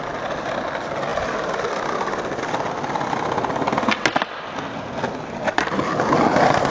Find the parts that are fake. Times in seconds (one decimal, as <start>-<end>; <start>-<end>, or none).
none